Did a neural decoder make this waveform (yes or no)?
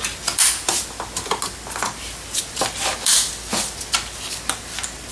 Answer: no